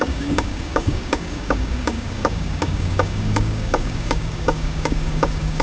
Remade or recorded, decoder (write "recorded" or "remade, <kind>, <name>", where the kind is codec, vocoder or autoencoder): remade, codec, DAC